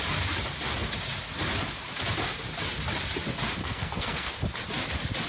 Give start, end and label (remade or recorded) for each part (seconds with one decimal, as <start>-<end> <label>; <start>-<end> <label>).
0.0-3.6 recorded; 3.6-4.3 remade; 4.3-5.3 recorded